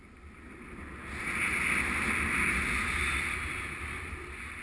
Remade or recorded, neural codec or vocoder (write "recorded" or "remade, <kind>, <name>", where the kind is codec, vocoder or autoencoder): recorded